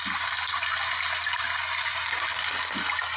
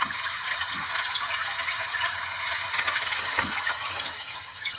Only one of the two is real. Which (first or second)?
first